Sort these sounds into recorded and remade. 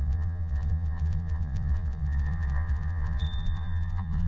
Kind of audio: remade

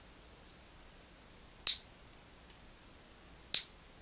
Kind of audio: recorded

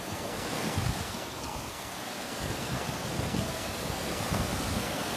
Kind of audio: remade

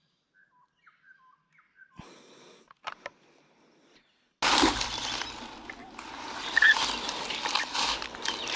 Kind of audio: recorded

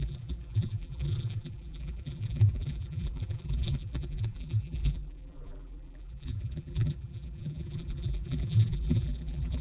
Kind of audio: remade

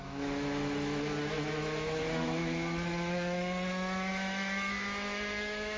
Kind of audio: remade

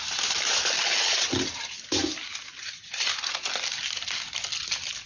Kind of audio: recorded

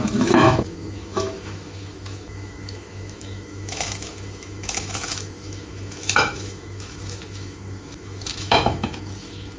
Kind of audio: remade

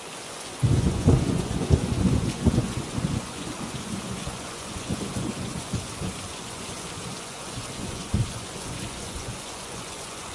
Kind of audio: remade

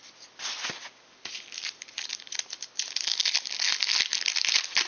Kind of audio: recorded